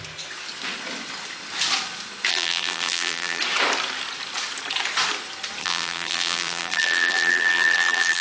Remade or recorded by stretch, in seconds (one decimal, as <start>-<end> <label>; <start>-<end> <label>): 0.0-2.3 recorded; 2.3-3.4 remade; 3.4-5.6 recorded; 5.6-8.2 remade